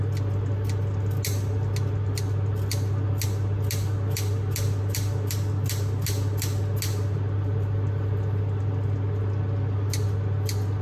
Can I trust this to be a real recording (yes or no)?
yes